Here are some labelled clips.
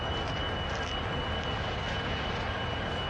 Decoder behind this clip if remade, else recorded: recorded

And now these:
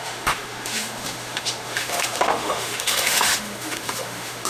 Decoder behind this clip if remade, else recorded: remade, autoencoder, DAC-VAE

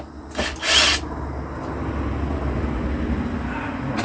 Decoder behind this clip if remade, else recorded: recorded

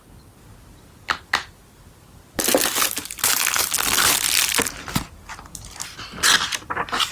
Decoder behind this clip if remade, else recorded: recorded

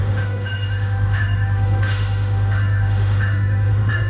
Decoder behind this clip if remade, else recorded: remade, autoencoder, DAC-VAE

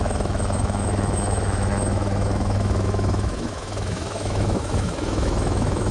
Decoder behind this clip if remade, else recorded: remade, autoencoder, DAC-VAE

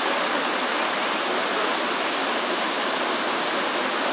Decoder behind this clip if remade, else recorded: recorded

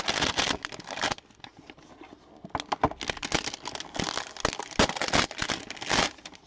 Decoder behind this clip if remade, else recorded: recorded